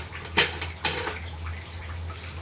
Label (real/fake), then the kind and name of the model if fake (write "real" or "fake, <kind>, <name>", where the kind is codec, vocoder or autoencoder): real